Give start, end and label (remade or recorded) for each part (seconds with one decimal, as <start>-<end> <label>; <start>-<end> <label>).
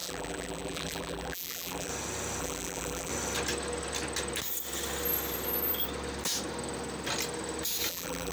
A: 0.0-1.9 remade; 1.9-2.4 recorded; 2.4-3.1 remade; 3.1-7.9 recorded; 7.9-8.3 remade